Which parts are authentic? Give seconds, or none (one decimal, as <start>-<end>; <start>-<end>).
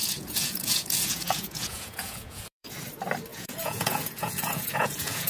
2.7-3.3